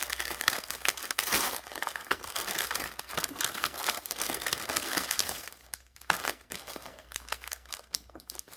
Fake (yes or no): yes